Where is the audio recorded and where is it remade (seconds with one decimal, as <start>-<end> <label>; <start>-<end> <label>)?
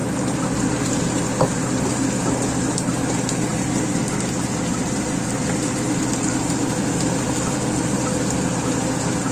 0.0-9.3 recorded